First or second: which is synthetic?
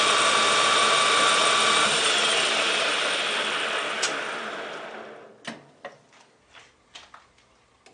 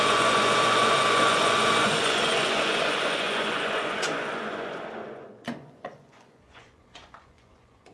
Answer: second